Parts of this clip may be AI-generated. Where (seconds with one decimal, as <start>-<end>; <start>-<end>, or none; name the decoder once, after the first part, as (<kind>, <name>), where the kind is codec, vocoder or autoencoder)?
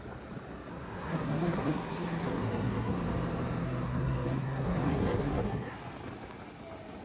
0.7-3.0 (codec, SNAC); 3.6-5.8